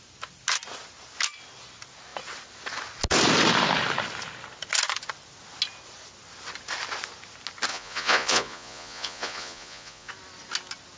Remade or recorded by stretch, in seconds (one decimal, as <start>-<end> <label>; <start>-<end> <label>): 0.0-7.7 recorded; 7.7-10.1 remade; 10.1-11.0 recorded